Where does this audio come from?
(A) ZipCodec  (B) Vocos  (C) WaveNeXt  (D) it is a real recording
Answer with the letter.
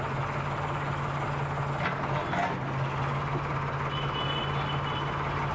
D